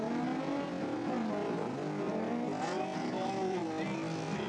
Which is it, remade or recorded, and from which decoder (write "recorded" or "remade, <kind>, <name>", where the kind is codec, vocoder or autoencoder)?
recorded